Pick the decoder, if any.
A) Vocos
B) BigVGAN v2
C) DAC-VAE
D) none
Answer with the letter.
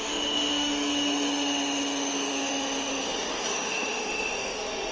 C